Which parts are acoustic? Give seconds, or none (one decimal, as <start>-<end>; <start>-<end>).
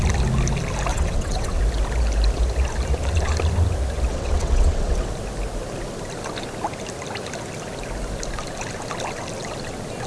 0.0-0.9; 1.6-4.1; 5.1-10.1